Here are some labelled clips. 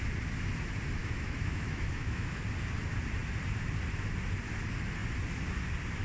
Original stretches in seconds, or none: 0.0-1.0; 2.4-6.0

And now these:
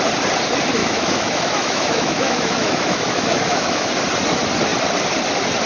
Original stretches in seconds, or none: 0.0-0.8; 3.9-5.7

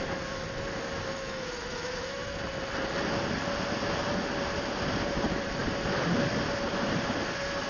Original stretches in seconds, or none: 0.0-1.1; 2.4-7.7

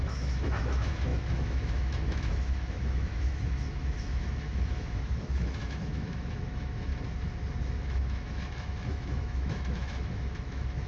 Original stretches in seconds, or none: 6.9-7.6

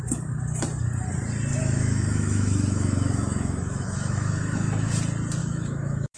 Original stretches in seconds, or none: 0.0-1.6; 4.9-5.4

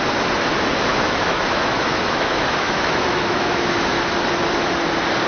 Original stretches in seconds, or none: 0.0-0.9; 4.0-5.3

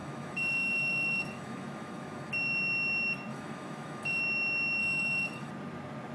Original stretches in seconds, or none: 2.3-3.3; 4.2-4.8; 5.5-6.1

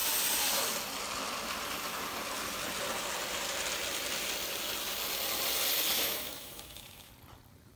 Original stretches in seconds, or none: 0.0-5.9; 7.1-7.8